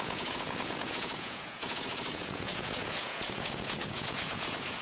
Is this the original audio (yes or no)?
no